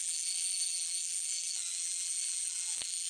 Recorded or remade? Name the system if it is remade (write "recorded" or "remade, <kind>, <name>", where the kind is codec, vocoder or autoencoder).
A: remade, vocoder, BigVGAN v2